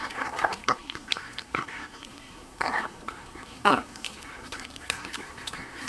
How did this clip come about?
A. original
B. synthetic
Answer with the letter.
B